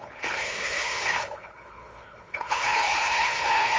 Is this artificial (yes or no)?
yes